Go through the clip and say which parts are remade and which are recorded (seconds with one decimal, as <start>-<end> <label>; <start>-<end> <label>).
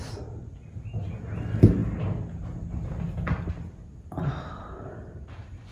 0.0-5.7 recorded